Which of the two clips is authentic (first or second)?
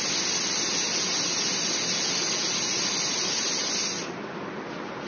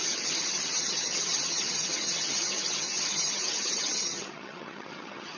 first